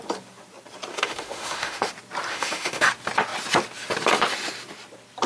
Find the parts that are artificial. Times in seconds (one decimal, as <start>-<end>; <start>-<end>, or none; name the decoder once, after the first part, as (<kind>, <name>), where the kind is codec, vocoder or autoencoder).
0.9-1.9 (autoencoder, DAC-VAE); 2.3-2.9